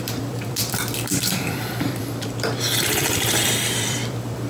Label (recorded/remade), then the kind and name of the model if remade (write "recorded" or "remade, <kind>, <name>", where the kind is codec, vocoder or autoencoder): remade, vocoder, BigVGAN v2